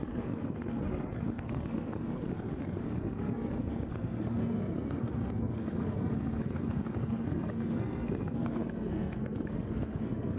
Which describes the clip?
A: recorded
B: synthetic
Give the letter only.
B